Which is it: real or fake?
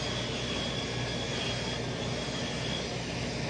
real